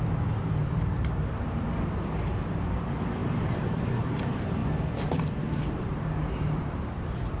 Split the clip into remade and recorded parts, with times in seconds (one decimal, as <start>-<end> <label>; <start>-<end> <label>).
0.0-4.6 remade; 4.6-5.4 recorded; 5.4-7.4 remade